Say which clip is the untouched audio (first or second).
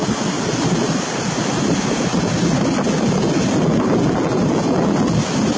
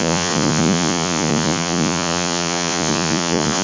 first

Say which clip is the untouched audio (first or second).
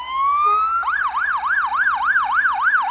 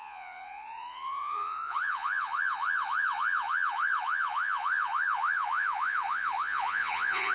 first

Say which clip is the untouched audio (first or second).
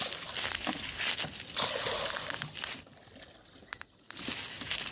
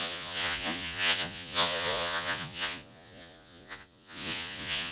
first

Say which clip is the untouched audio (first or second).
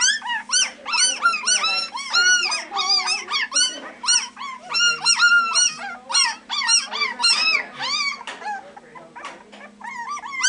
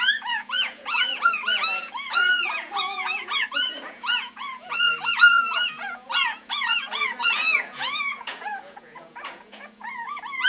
first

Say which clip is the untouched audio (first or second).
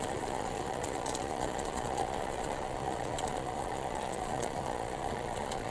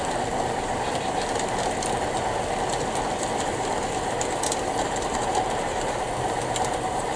second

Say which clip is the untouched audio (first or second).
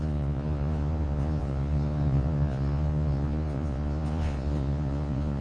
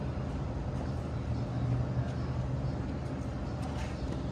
second